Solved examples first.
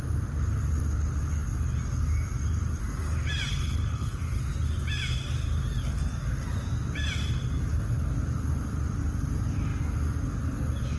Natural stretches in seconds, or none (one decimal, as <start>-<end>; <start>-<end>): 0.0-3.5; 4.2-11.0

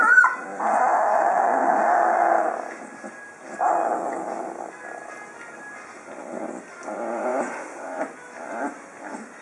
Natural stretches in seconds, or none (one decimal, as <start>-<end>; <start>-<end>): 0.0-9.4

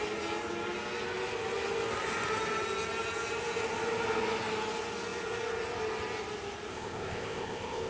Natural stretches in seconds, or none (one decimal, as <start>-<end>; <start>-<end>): 0.0-6.7

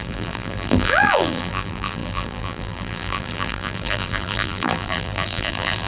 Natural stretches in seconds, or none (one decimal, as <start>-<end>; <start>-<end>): none

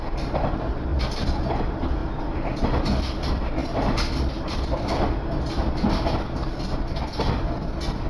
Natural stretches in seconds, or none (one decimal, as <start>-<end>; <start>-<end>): 0.0-8.1

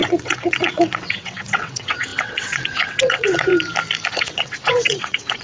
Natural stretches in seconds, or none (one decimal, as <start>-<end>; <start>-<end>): 3.5-4.1

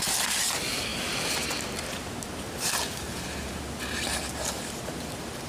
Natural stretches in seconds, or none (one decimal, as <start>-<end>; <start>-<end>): 0.9-2.6

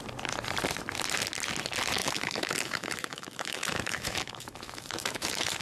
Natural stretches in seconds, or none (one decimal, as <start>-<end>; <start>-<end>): 0.0-2.0